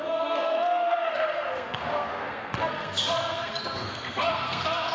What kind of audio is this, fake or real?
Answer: fake